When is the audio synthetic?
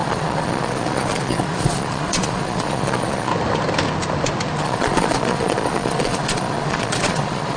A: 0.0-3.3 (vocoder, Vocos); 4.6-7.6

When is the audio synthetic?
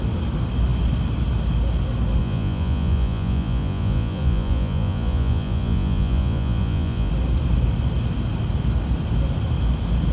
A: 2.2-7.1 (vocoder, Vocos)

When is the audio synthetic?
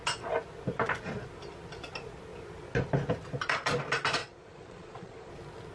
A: 4.2-5.3 (vocoder, Vocos)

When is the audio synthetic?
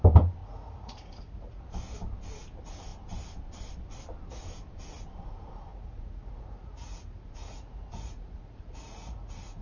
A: 0.4-1.6 (vocoder, Vocos); 5.7-9.6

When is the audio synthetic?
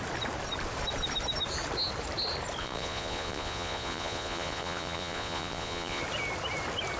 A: 2.6-6.0 (vocoder, Vocos)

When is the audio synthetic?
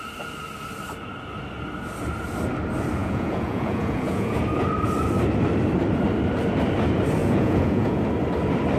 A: 3.0-4.4 (vocoder, Vocos); 7.2-8.0